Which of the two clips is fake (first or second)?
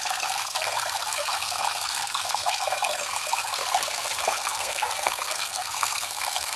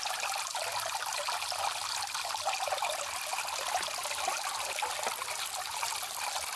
first